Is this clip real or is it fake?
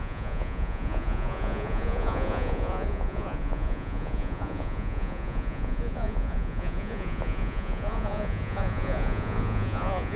fake